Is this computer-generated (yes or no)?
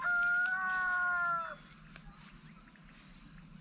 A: no